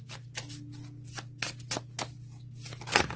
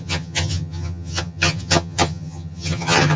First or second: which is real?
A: first